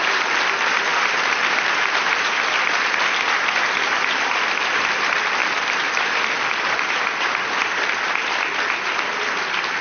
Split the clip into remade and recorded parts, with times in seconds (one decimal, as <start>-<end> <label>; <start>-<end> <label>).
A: 0.0-9.8 remade